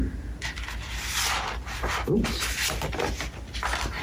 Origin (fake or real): real